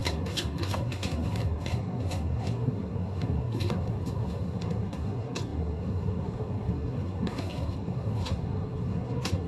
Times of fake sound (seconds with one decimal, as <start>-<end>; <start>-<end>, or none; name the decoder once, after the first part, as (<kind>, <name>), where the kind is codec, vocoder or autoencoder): 0.0-9.5 (codec, SNAC)